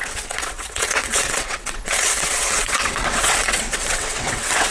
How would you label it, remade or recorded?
remade